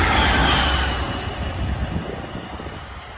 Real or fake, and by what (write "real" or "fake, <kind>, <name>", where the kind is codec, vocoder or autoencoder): real